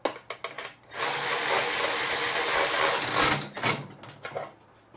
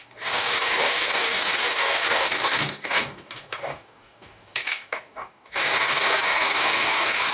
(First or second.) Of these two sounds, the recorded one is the first